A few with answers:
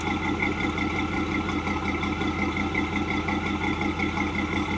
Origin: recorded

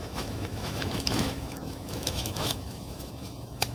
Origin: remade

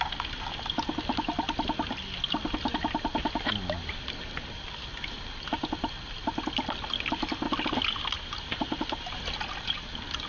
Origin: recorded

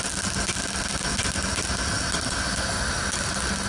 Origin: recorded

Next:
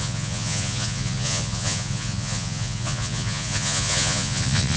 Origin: remade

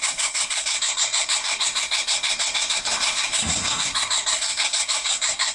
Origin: remade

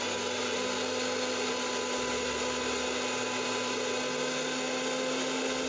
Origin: recorded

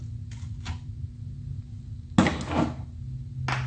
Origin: recorded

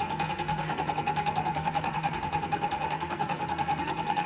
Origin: remade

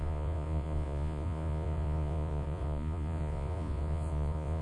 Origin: remade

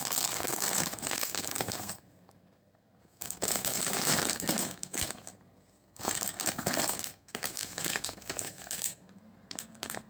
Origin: remade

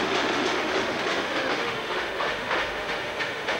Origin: remade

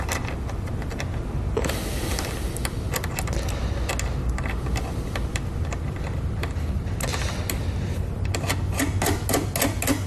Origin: recorded